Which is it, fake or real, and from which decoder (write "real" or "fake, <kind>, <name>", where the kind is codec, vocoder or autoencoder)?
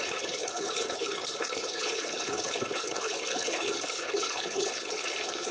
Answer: fake, codec, HILCodec